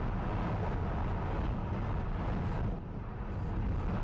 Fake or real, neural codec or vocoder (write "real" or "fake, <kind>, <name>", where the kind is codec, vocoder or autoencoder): real